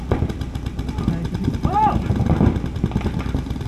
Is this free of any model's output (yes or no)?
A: no